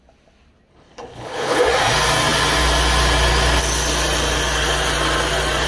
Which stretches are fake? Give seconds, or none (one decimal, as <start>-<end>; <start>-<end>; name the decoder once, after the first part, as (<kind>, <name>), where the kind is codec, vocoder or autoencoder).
0.7-1.6 (codec, HILCodec)